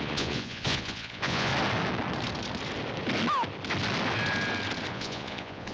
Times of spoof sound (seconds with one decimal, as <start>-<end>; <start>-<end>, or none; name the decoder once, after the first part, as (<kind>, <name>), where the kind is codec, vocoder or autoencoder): 0.0-1.5 (vocoder, Vocos); 4.9-5.7